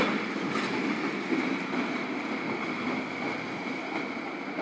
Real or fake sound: real